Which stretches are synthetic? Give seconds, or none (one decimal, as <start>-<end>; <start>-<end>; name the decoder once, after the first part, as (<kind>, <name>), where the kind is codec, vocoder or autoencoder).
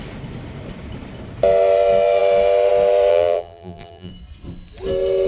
3.1-4.1 (vocoder, BigVGAN v2)